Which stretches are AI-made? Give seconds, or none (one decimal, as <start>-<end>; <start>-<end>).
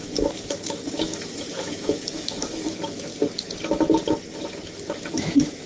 0.0-3.1; 5.1-5.7